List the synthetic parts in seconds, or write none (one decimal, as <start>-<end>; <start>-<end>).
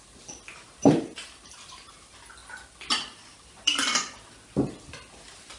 0.8-1.9